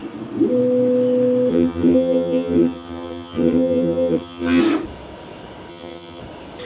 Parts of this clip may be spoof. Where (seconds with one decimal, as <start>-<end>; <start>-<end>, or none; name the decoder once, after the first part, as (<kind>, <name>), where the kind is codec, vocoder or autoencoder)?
1.5-4.6 (vocoder, HiFi-GAN); 5.7-6.2